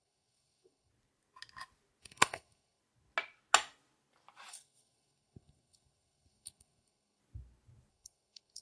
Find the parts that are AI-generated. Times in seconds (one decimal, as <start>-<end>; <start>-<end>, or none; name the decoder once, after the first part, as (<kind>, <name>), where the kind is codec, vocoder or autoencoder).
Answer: 0.0-0.9 (codec, SNAC); 2.0-2.8; 4.5-7.2; 7.9-8.6